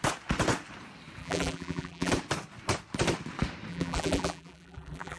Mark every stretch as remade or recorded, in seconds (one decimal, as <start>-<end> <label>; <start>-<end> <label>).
0.0-1.2 recorded; 1.2-2.1 remade; 2.1-3.7 recorded; 3.7-5.2 remade